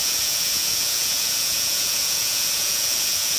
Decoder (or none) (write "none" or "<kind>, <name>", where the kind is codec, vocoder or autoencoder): vocoder, Vocos